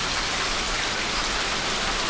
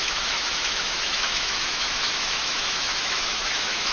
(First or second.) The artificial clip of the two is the second